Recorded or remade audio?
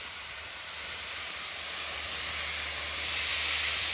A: remade